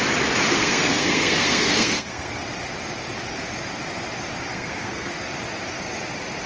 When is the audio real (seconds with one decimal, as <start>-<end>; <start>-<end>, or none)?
0.0-0.5; 2.4-4.5; 5.1-6.5